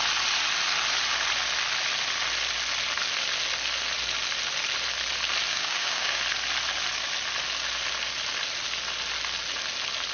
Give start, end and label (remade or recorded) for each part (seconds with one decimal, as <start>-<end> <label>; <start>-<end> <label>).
0.0-5.5 recorded; 5.5-6.2 remade; 6.2-10.1 recorded